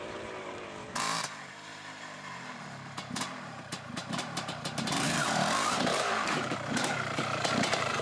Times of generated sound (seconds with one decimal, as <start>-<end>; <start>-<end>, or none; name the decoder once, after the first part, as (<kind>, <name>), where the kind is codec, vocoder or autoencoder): 0.0-8.0 (vocoder, BigVGAN v2)